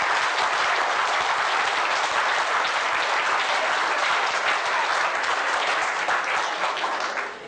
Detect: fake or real real